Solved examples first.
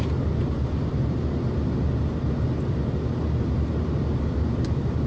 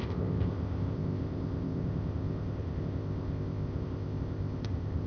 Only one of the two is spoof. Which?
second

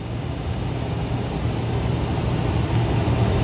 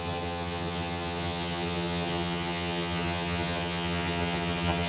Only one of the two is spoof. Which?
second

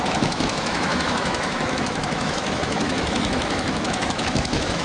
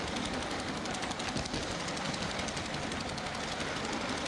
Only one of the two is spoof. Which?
first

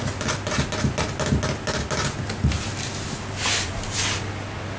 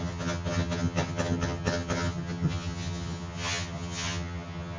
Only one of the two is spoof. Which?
second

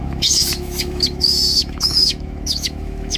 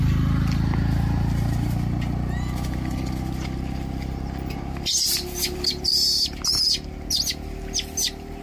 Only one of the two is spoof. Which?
first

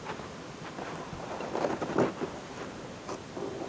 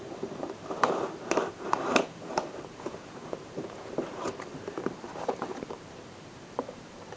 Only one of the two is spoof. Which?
second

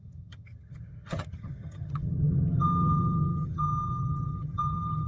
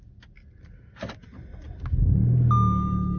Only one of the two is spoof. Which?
first